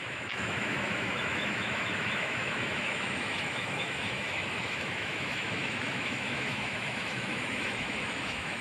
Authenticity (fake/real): fake